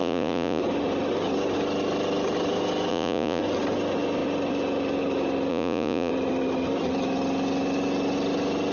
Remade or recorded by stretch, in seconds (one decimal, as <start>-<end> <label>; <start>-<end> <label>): 0.0-0.6 remade; 0.6-2.9 recorded; 2.9-3.4 remade; 3.4-5.5 recorded; 5.5-6.1 remade; 6.1-8.7 recorded

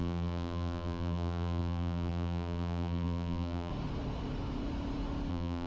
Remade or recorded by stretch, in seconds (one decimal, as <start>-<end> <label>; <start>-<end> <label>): 0.0-3.7 remade; 3.7-5.3 recorded; 5.3-5.7 remade

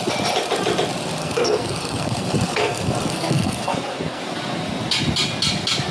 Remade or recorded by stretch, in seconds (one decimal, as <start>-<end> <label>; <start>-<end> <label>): 0.0-1.2 recorded; 1.2-4.2 remade; 4.2-5.9 recorded

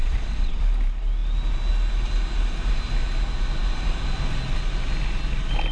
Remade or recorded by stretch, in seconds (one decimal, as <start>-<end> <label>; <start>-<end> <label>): 0.0-0.6 remade; 0.6-5.7 recorded

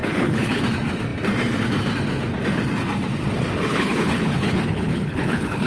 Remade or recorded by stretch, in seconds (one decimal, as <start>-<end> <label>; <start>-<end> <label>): 0.0-0.6 remade; 0.6-3.7 recorded; 3.7-5.7 remade

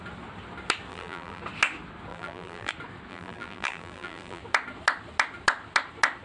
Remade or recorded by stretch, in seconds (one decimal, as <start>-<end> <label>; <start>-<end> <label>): 0.0-0.9 recorded; 0.9-1.4 remade; 1.4-2.1 recorded; 2.1-2.7 remade; 2.7-3.1 recorded; 3.1-4.4 remade; 4.4-6.2 recorded